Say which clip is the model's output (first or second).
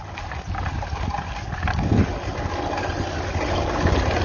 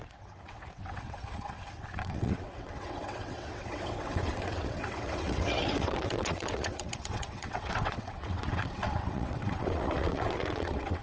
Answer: second